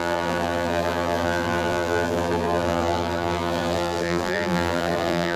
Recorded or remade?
remade